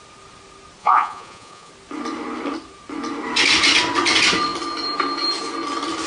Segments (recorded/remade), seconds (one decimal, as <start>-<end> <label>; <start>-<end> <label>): 0.0-0.8 recorded; 0.8-1.7 remade; 1.7-6.1 recorded